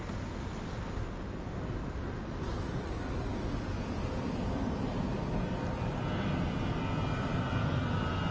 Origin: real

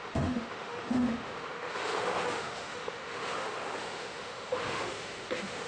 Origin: fake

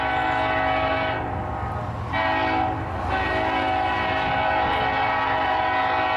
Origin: real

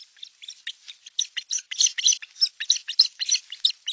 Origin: real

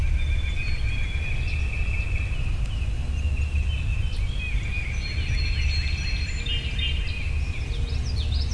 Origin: real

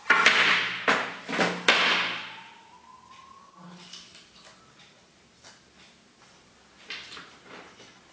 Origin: real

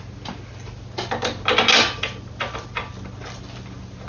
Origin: real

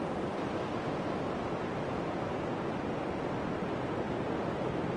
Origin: real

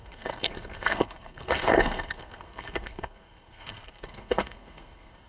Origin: fake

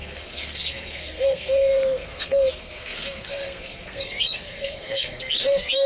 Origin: fake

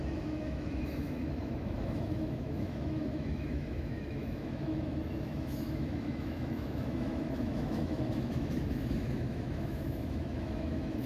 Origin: fake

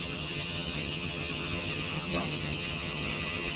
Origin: fake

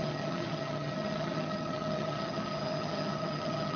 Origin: fake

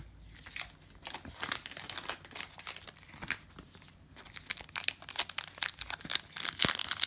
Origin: real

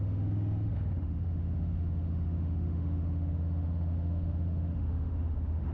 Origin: fake